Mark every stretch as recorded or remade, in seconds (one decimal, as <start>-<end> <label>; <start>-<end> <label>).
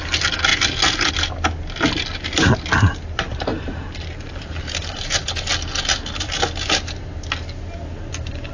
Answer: 0.0-3.5 recorded; 3.5-5.3 remade; 5.3-8.5 recorded